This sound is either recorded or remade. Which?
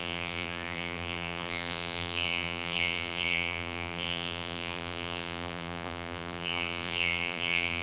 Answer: remade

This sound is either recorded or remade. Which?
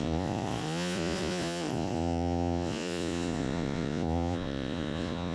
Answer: remade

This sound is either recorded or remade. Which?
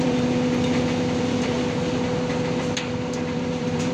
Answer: remade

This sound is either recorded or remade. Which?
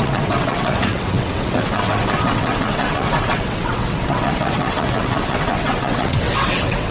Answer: remade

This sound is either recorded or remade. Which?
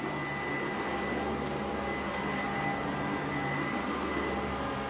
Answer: recorded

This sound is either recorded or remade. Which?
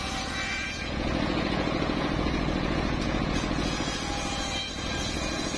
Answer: remade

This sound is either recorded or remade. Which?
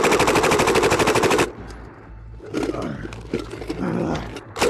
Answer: recorded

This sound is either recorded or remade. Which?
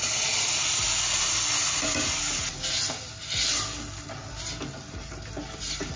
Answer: recorded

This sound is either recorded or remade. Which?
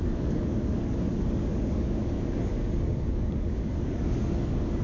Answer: remade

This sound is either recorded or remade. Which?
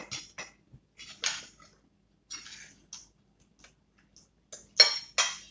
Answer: recorded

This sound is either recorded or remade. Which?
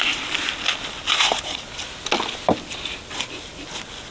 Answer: recorded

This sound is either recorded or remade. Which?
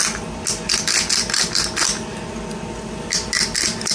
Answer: recorded